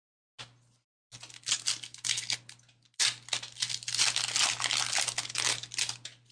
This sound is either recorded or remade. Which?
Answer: recorded